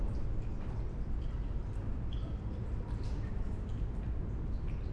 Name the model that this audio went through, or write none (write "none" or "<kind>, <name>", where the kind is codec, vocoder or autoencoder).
none